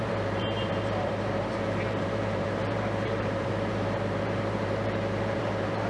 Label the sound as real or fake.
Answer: fake